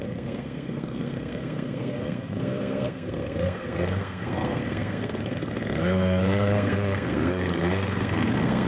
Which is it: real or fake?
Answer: fake